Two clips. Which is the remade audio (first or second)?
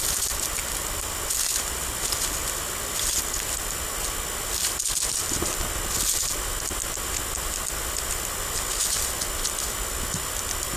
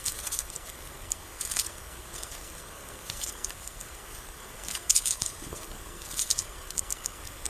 second